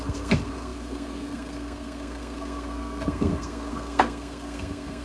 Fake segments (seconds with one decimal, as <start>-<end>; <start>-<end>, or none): 0.0-5.0